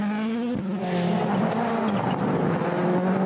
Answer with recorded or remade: recorded